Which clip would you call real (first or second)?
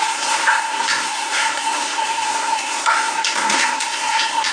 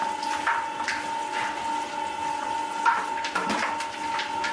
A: second